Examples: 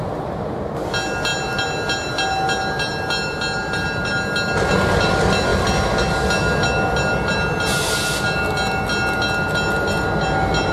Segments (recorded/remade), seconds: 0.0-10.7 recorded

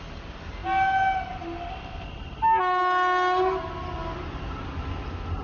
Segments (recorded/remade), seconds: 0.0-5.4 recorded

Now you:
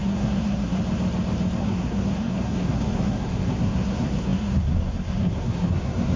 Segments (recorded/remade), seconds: 0.0-0.8 remade; 0.8-1.6 recorded; 1.6-6.2 remade